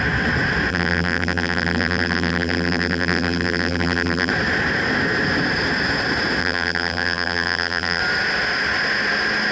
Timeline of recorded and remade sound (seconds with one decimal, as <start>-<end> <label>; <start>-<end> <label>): 0.0-0.7 recorded; 0.7-4.3 remade; 4.3-6.4 recorded; 6.4-8.0 remade; 8.0-9.5 recorded